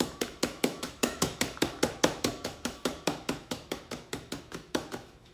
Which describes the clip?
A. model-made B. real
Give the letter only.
A